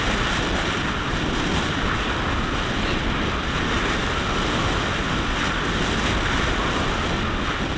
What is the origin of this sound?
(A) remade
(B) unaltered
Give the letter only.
B